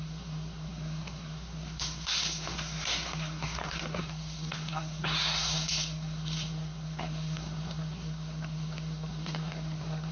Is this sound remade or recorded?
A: remade